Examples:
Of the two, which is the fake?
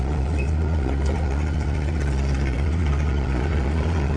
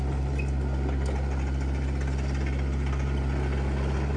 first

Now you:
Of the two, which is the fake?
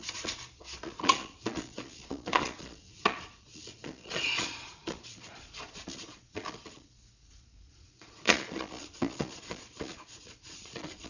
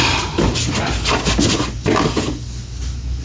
first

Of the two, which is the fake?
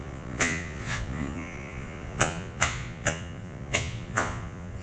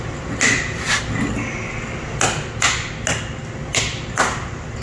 first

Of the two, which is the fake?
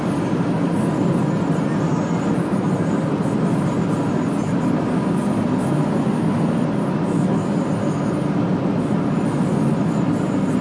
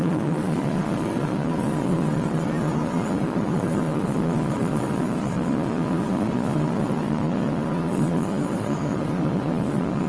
second